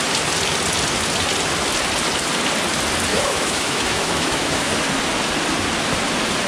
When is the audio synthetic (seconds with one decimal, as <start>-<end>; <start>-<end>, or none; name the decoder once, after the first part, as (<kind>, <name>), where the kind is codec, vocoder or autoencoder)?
3.1-4.7 (autoencoder, DAC-VAE)